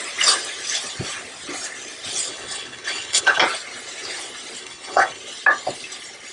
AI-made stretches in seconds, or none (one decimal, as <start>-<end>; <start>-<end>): 2.3-3.4; 4.6-5.2